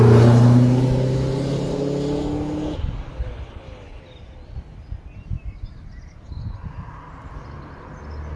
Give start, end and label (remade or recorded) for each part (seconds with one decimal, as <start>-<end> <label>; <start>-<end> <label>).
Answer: 0.0-3.1 recorded; 3.1-4.0 remade; 4.0-8.4 recorded